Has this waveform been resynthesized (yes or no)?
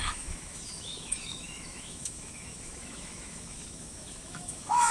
yes